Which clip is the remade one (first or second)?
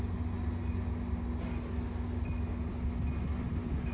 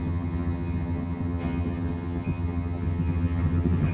second